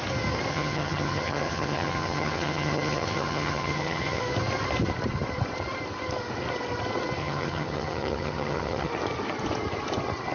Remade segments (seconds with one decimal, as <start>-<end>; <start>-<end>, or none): 0.5-4.2; 7.2-8.9